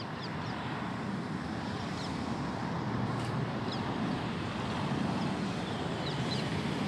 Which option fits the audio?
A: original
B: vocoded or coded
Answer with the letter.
B